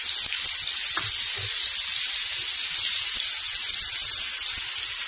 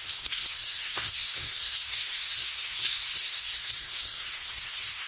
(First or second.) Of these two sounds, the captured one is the first